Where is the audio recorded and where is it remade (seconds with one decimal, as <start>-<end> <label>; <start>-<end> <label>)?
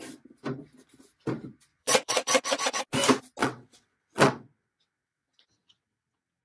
0.0-1.7 recorded; 1.7-2.8 remade; 2.8-3.4 recorded; 3.4-6.4 remade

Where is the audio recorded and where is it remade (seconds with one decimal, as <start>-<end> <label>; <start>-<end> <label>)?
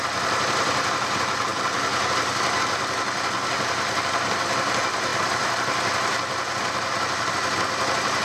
0.0-8.2 recorded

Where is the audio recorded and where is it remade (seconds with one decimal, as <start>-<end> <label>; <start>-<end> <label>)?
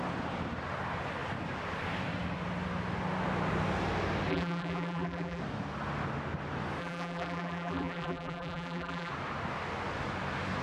0.0-4.3 recorded; 4.3-5.4 remade; 5.4-6.8 recorded; 6.8-9.1 remade; 9.1-10.6 recorded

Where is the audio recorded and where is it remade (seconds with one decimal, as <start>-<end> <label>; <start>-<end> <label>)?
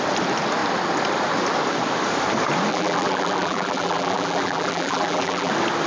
0.0-2.7 recorded; 2.7-5.5 remade; 5.5-5.9 recorded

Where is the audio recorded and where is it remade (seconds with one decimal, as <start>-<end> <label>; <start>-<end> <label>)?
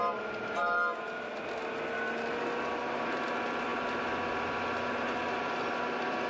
0.0-6.3 recorded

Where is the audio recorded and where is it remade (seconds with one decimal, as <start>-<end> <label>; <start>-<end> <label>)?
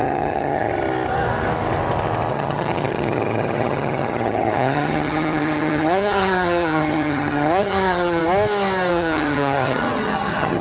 0.0-0.7 remade; 0.7-2.3 recorded; 2.3-8.2 remade; 8.2-8.9 recorded; 8.9-10.6 remade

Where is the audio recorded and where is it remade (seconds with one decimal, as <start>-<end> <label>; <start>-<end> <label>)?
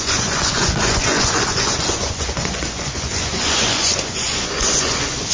0.0-5.3 remade